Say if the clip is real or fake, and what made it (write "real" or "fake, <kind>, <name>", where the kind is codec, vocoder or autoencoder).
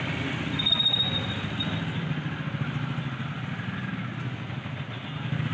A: real